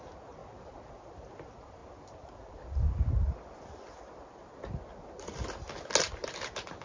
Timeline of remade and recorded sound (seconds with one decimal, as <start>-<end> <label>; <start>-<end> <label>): 0.0-0.4 recorded; 0.4-0.9 remade; 0.9-6.8 recorded